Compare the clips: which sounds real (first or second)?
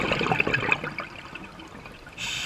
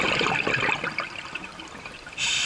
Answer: first